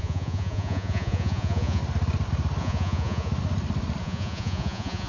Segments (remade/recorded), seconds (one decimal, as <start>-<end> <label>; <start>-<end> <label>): 0.0-1.8 remade; 1.8-2.6 recorded; 2.6-3.3 remade; 3.3-4.0 recorded; 4.0-5.1 remade